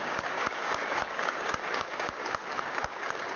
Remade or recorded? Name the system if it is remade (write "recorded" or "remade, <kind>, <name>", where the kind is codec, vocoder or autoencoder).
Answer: remade, codec, DAC